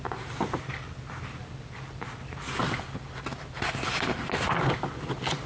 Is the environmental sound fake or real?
real